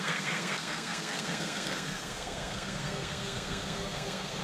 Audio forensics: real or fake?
fake